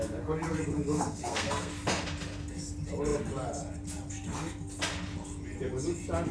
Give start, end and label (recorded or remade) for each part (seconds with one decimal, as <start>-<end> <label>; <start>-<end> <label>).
0.0-0.7 recorded; 0.7-1.7 remade; 1.7-6.3 recorded